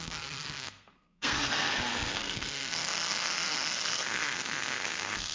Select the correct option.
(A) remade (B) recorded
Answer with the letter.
A